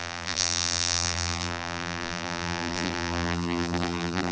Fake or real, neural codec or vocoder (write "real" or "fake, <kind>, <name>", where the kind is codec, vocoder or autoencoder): fake, vocoder, BigVGAN v2